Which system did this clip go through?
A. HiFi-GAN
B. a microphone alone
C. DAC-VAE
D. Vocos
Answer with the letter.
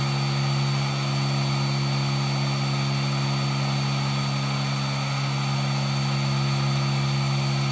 B